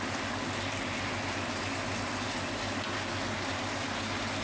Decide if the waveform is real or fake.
real